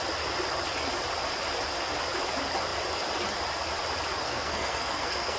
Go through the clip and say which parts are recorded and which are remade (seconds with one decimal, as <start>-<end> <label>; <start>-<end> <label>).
0.0-4.2 recorded; 4.2-5.4 remade